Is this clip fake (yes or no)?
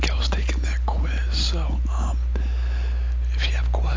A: no